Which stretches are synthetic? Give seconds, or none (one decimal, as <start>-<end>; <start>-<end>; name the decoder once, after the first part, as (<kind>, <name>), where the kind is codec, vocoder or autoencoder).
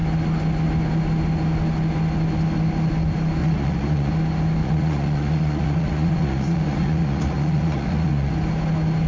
3.4-4.1 (vocoder, Vocos); 4.6-8.3